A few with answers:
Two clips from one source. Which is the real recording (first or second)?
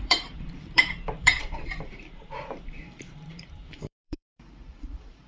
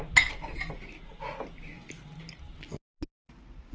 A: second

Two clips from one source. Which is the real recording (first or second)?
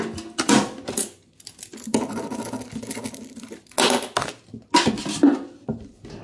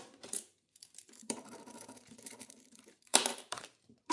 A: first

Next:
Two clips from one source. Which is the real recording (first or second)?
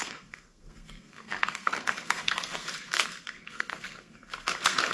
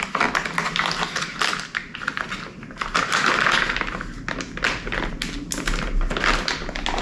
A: second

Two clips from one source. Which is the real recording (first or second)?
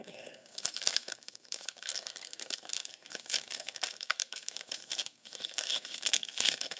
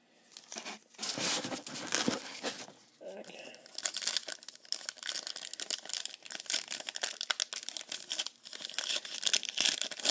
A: second